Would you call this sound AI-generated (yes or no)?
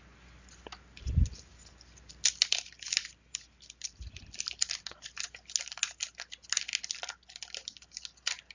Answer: no